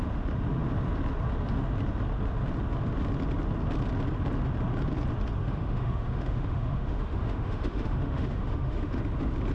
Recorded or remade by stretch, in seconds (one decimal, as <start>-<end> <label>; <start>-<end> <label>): 0.0-5.4 recorded; 5.4-9.0 remade; 9.0-9.5 recorded